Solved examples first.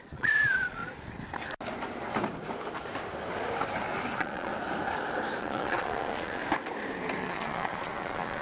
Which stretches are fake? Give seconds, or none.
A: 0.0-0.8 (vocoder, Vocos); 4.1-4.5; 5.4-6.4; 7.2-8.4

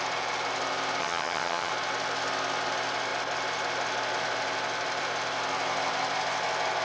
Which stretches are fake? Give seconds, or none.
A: 1.0-1.7 (vocoder, HiFi-GAN)

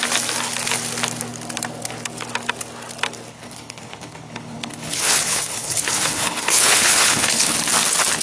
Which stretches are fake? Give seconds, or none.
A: 3.3-7.5 (codec, HILCodec)

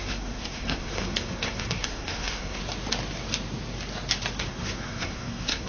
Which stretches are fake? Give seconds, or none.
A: 0.0-2.6 (codec, SNAC); 4.4-5.7

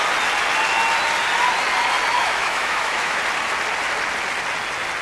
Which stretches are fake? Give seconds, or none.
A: 2.2-3.2 (autoencoder, DAC-VAE)

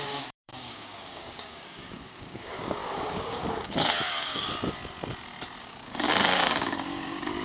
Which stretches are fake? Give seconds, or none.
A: 0.0-4.5 (codec, DAC); 5.6-7.4

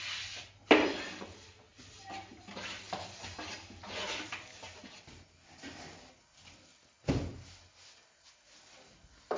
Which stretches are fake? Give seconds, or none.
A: none